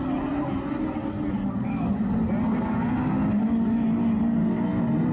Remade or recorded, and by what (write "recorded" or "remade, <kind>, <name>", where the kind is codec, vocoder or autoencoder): recorded